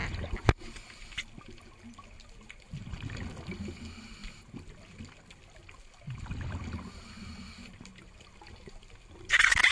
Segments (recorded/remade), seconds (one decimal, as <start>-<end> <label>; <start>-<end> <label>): 0.0-9.7 recorded